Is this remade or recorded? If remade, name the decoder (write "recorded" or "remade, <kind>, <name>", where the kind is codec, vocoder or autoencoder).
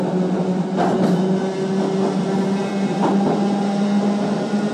recorded